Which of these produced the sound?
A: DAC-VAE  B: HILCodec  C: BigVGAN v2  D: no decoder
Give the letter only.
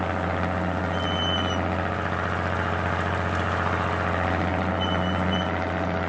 D